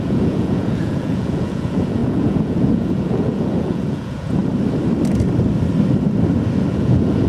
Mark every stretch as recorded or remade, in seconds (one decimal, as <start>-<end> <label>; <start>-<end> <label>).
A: 0.0-4.4 remade; 4.4-6.7 recorded; 6.7-7.3 remade